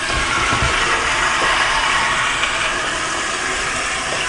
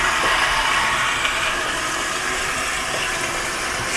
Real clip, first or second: second